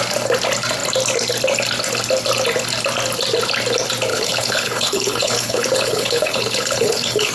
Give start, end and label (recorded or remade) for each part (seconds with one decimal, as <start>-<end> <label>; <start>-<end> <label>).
0.0-4.1 recorded; 4.1-7.3 remade